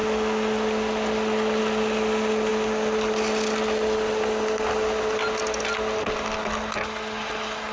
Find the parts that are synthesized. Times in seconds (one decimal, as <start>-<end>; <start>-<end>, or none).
none